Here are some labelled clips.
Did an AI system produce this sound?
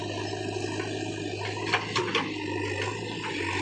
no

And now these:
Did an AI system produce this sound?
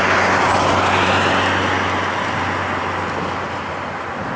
no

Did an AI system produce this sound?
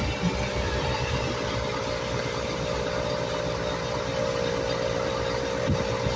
no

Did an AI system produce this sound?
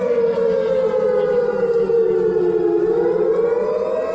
no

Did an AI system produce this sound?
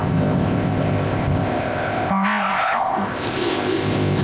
yes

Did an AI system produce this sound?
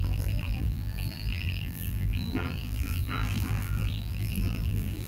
yes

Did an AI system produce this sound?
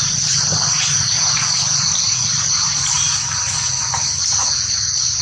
no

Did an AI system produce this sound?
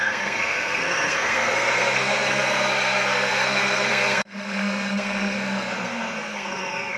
yes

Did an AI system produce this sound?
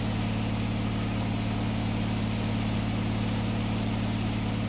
no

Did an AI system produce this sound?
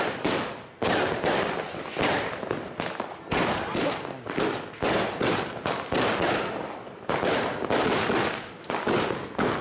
no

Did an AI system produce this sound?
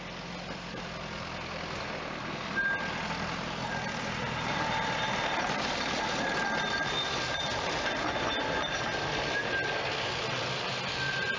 no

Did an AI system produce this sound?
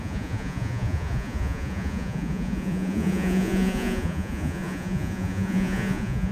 yes